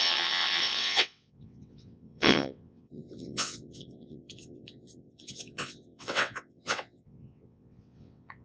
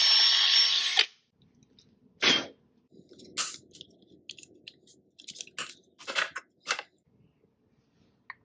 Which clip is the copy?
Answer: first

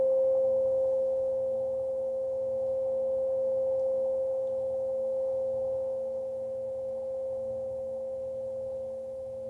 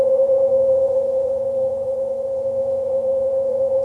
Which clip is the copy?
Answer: second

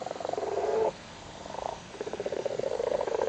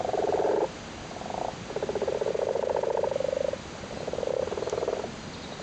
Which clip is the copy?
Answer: first